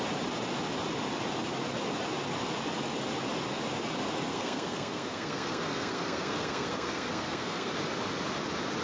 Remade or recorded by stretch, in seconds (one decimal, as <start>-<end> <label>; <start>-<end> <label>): 0.0-4.3 recorded; 4.3-7.7 remade; 7.7-8.8 recorded